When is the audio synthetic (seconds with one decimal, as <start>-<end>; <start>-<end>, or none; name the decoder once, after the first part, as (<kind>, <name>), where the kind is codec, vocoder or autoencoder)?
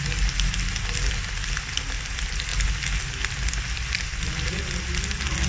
none